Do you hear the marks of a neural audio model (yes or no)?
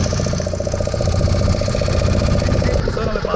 no